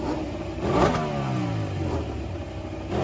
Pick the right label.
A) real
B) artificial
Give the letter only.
A